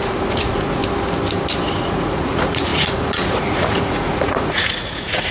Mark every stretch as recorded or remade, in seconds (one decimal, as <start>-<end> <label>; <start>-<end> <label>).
0.0-0.8 remade; 0.8-1.8 recorded; 1.8-5.3 remade

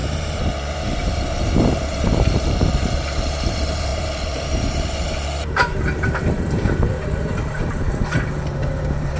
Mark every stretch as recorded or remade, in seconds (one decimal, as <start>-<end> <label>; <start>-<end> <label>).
0.0-9.2 remade

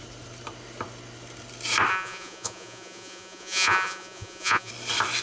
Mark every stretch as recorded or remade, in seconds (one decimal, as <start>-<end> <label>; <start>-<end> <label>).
0.0-1.9 recorded; 1.9-4.7 remade; 4.7-5.2 recorded

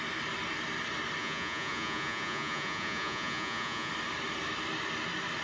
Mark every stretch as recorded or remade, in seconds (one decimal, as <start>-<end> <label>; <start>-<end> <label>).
0.0-1.2 recorded; 1.2-3.9 remade; 3.9-5.4 recorded

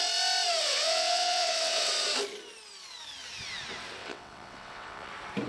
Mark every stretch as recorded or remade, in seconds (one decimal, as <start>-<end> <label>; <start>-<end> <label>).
0.0-0.6 recorded; 0.6-1.9 remade; 1.9-4.0 recorded; 4.0-5.1 remade; 5.1-5.5 recorded

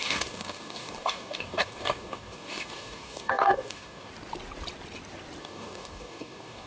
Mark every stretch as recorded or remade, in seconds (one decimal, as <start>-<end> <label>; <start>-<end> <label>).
0.0-4.1 remade; 4.1-5.4 recorded; 5.4-6.7 remade

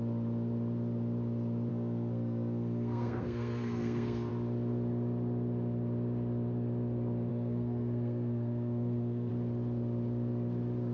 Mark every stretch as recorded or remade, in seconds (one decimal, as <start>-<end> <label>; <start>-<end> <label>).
0.0-1.7 recorded; 1.7-4.3 remade; 4.3-7.3 recorded; 7.3-9.3 remade; 9.3-10.9 recorded